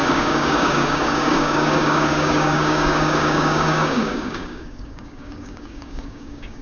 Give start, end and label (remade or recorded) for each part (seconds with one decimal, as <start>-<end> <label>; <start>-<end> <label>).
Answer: 0.0-6.6 remade